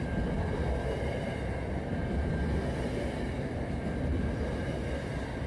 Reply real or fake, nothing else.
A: real